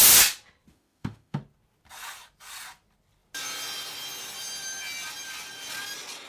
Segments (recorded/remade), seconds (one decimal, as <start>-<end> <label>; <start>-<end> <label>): 0.0-0.7 recorded; 0.7-1.4 remade; 1.4-6.3 recorded